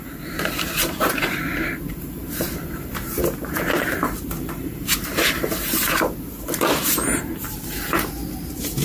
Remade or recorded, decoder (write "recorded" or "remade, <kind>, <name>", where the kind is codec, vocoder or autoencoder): remade, vocoder, BigVGAN v2